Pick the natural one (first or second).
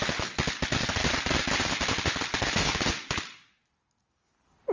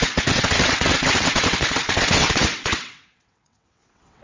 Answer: first